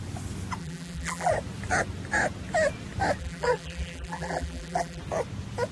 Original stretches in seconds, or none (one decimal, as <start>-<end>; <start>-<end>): 0.0-0.6; 1.3-3.2; 5.0-5.7